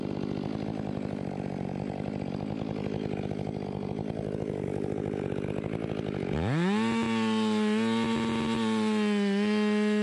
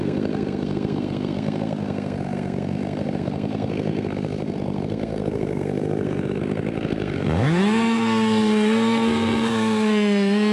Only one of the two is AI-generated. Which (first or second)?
second